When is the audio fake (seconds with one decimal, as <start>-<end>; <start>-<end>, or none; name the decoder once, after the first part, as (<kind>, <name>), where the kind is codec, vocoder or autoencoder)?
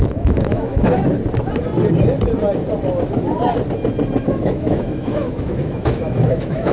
0.0-1.0 (autoencoder, DAC-VAE); 4.2-6.7